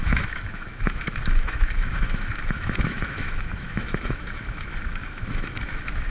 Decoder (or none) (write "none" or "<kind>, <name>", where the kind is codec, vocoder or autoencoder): autoencoder, DAC-VAE